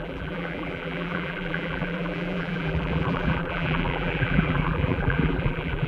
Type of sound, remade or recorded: remade